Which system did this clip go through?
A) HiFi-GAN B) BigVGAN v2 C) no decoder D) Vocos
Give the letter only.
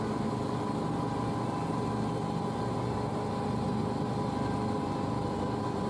C